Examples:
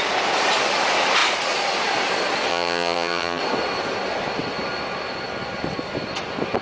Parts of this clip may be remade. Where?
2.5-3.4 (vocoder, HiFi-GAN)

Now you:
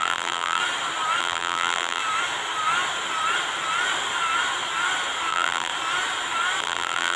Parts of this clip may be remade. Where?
0.0-0.6 (vocoder, BigVGAN v2); 1.2-2.0; 5.3-5.7; 6.6-7.2

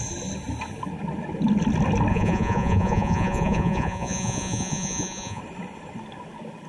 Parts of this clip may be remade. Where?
2.1-5.4 (vocoder, Vocos)

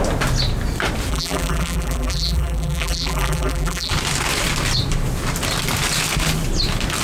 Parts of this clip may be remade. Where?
1.1-3.9 (vocoder, BigVGAN v2)

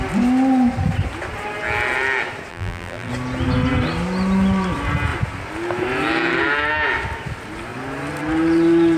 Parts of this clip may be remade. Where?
2.5-3.1 (vocoder, BigVGAN v2)